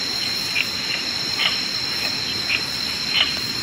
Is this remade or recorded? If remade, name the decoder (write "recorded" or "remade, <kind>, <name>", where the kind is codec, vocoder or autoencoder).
remade, vocoder, BigVGAN v2